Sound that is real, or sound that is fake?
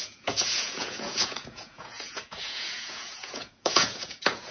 fake